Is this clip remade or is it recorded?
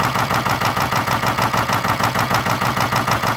remade